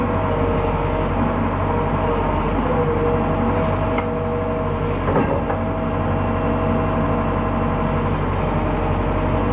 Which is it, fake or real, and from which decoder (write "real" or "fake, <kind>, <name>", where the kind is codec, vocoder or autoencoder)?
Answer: real